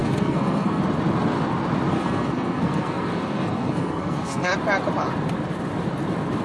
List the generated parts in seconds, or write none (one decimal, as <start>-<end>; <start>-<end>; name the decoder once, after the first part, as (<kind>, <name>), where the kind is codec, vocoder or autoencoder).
0.0-0.8 (codec, SNAC); 1.9-4.5